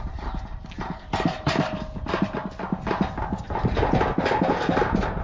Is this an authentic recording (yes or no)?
yes